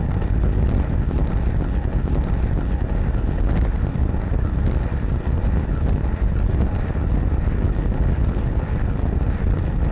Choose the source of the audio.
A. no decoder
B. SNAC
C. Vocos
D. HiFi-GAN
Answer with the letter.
A